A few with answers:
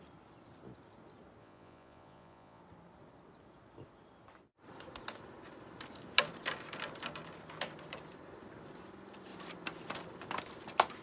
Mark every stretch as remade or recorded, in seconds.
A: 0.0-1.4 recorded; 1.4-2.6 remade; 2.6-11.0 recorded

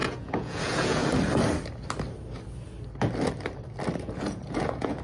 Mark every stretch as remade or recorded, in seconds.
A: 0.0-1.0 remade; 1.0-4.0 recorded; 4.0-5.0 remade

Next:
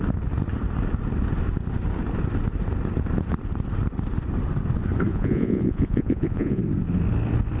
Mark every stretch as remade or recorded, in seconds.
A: 0.0-5.1 recorded; 5.1-6.6 remade; 6.6-7.6 recorded